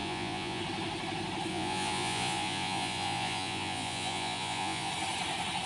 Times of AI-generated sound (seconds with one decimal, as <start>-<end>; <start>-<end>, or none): 0.0-0.6; 1.5-4.9